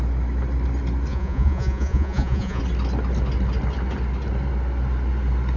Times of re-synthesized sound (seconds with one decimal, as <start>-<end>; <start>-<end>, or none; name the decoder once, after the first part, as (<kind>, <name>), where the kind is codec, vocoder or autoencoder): 1.1-2.6 (vocoder, Vocos)